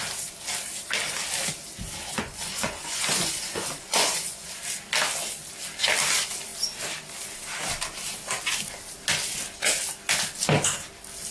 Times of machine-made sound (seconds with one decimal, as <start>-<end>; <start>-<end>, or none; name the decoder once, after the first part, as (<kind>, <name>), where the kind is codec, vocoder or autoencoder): 2.0-4.6 (vocoder, Vocos)